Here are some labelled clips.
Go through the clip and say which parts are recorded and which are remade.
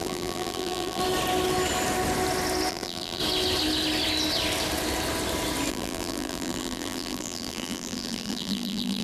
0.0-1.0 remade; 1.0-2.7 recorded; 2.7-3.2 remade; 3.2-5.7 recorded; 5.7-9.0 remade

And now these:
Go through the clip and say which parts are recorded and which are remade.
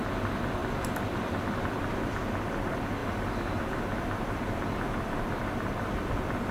0.0-3.0 recorded; 3.0-5.4 remade; 5.4-6.5 recorded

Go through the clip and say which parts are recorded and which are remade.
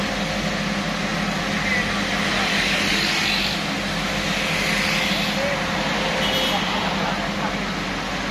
0.0-8.3 recorded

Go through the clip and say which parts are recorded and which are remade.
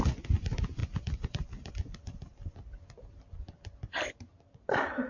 0.0-5.1 remade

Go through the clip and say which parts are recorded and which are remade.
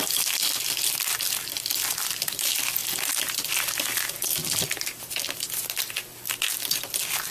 0.0-7.3 recorded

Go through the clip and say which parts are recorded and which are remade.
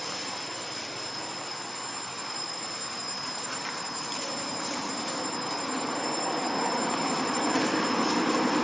0.0-2.8 recorded; 2.8-7.6 remade; 7.6-8.6 recorded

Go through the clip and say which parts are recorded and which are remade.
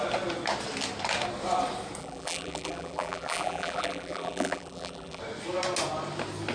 0.0-2.0 recorded; 2.0-5.2 remade; 5.2-6.5 recorded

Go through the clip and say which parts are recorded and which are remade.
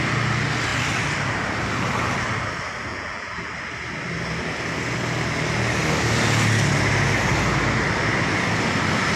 0.0-2.9 recorded; 2.9-3.5 remade; 3.5-9.2 recorded